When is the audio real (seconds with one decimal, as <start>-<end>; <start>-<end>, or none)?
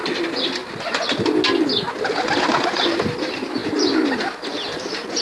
0.0-5.2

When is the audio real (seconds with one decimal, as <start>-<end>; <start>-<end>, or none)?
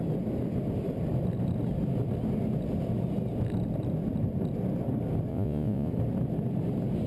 0.0-5.3; 5.9-7.1